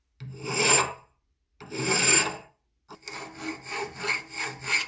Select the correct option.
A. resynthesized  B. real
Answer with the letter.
B